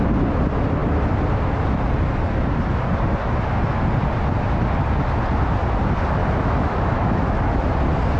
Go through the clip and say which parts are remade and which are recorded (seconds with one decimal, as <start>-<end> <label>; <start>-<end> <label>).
0.0-6.2 recorded; 6.2-7.4 remade; 7.4-8.2 recorded